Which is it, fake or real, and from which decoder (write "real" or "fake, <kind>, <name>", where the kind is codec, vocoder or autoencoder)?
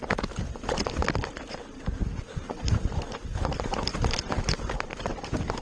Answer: real